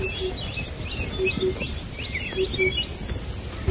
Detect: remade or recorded recorded